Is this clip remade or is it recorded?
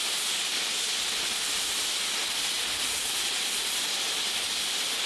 recorded